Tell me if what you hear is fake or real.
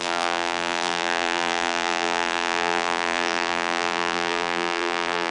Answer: fake